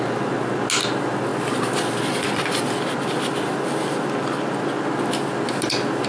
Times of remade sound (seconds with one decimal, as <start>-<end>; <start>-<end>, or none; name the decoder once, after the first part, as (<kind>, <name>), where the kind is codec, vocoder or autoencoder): none